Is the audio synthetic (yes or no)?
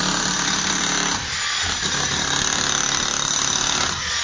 no